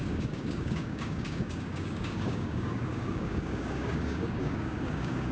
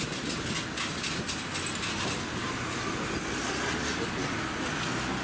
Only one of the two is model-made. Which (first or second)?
first